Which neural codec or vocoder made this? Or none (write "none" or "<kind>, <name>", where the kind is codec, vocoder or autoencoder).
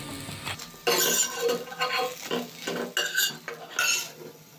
none